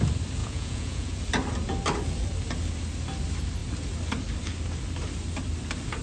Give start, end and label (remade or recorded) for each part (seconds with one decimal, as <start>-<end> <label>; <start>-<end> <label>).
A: 0.0-0.4 recorded; 0.4-1.2 remade; 1.2-6.0 recorded